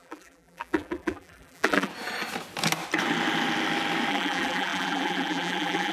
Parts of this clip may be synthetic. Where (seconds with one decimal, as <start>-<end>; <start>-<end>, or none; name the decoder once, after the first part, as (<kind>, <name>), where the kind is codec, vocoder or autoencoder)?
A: 0.0-1.9 (vocoder, BigVGAN v2); 4.1-5.9